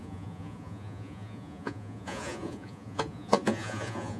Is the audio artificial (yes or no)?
yes